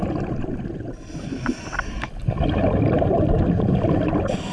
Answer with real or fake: real